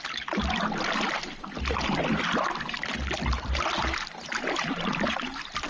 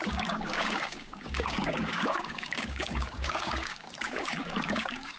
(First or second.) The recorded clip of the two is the first